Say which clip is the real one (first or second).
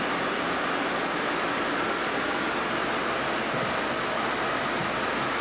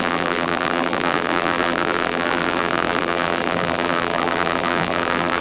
first